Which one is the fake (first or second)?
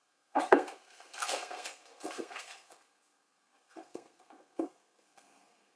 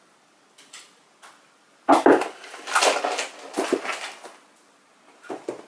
first